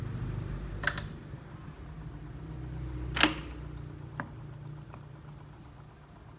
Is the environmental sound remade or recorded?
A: recorded